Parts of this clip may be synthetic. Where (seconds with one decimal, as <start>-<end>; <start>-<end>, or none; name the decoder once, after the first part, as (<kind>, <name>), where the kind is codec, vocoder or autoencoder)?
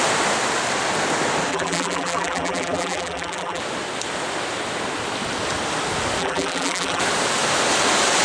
1.5-3.6 (vocoder, BigVGAN v2); 6.2-7.0